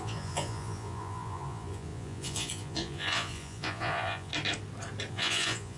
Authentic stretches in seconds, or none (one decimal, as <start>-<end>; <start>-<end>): 4.3-5.1